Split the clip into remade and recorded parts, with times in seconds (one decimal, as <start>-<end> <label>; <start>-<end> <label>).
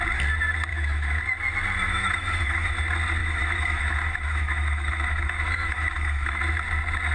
0.0-0.7 recorded; 0.7-1.2 remade; 1.2-1.9 recorded; 1.9-2.7 remade; 2.7-3.2 recorded; 3.2-6.4 remade; 6.4-7.1 recorded